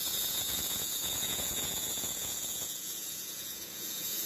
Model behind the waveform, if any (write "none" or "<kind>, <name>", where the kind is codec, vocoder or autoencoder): vocoder, Vocos